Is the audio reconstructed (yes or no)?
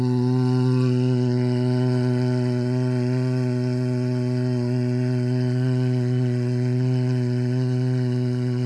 no